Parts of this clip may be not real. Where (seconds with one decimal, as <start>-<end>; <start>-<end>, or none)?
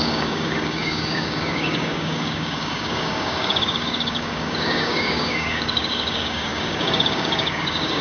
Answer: 0.0-8.0